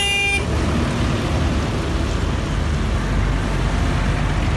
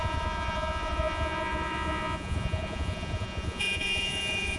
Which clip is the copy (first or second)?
second